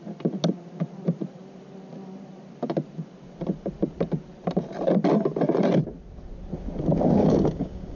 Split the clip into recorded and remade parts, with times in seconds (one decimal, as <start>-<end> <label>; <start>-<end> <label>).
0.0-7.2 recorded; 7.2-8.0 remade